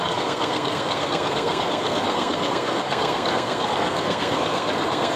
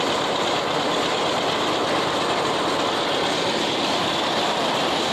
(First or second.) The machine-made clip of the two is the first